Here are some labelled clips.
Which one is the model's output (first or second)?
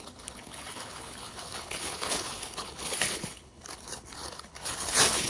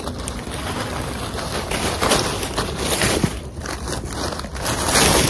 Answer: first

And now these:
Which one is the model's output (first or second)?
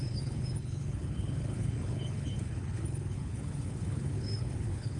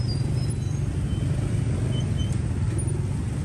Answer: first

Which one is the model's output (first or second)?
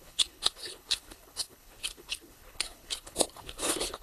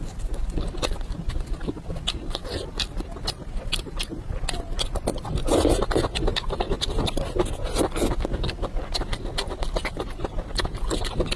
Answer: first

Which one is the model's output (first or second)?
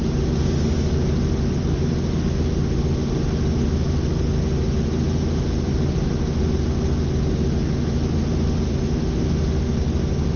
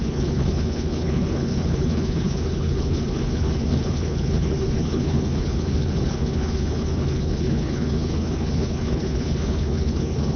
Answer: second